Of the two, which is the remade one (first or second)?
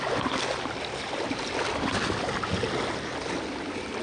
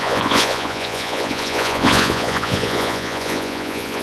second